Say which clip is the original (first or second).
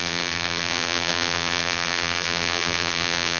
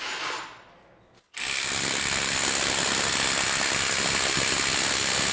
second